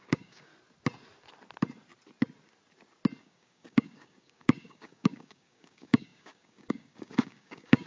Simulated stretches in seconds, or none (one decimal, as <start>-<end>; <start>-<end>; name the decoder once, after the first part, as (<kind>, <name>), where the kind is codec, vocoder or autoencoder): 0.0-0.5 (codec, DAC); 3.2-7.9